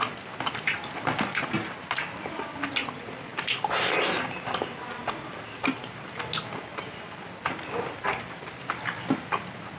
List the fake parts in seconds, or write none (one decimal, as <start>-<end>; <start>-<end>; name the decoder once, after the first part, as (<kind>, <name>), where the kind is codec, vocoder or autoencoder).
none